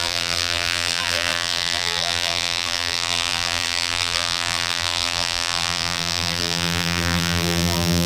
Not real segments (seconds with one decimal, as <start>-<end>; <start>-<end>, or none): 0.0-8.1